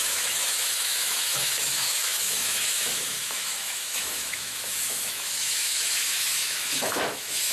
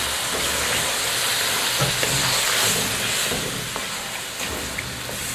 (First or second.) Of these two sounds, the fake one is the first